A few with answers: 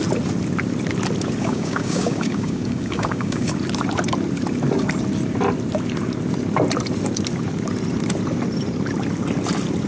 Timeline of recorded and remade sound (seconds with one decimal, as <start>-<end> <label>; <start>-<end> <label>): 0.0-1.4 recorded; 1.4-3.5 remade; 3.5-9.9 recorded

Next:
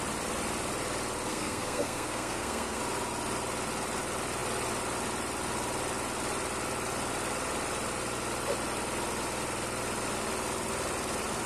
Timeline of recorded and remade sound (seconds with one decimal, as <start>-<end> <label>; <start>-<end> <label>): 0.0-1.3 recorded; 1.3-2.8 remade; 2.8-11.5 recorded

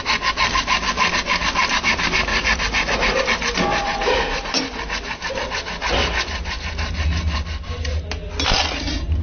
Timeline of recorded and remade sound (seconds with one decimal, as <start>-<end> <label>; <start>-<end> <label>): 0.0-2.3 recorded; 2.3-3.2 remade; 3.2-3.7 recorded; 3.7-4.5 remade; 4.5-9.2 recorded

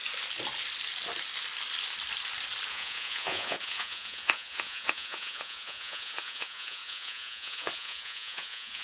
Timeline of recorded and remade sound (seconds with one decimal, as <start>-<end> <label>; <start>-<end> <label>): 0.0-2.7 recorded; 2.7-8.8 remade

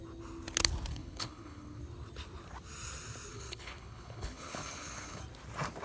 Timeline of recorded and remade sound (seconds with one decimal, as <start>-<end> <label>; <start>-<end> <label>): 0.0-0.9 recorded; 0.9-1.8 remade; 1.8-3.3 recorded; 3.3-5.2 remade; 5.2-5.8 recorded

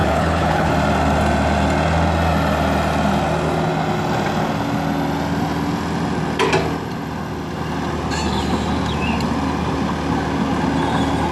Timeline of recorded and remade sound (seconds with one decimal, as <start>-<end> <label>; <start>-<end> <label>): 0.0-0.7 remade; 0.7-11.3 recorded